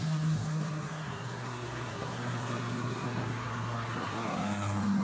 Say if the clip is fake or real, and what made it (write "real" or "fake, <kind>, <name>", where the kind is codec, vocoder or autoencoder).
fake, codec, SNAC